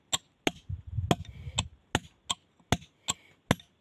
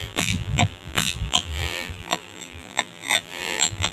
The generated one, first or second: second